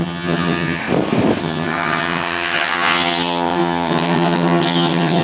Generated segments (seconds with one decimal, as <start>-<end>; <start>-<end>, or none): 0.0-0.8; 1.4-5.2